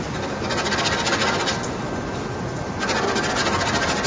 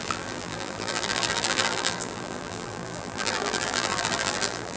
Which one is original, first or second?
first